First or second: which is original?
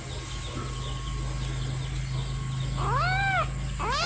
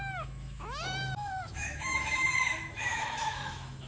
first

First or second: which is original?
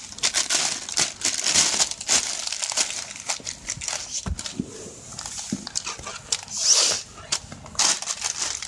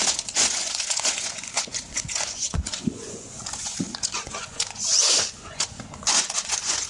first